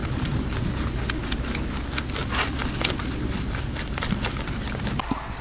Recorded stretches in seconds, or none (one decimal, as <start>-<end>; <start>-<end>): 0.6-2.2; 4.8-5.4